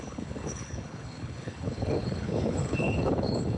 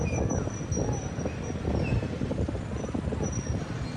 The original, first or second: second